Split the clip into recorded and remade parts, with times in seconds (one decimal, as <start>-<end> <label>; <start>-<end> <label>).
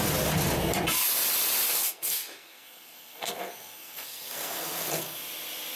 0.0-1.7 recorded; 1.7-5.2 remade; 5.2-5.8 recorded